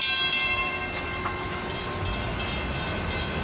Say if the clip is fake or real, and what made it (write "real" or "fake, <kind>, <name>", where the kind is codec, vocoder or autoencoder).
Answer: real